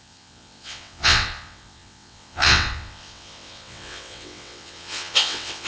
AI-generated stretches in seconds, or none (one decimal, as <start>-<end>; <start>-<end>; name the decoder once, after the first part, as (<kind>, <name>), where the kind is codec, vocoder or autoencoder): 0.0-5.7 (vocoder, WaveNeXt)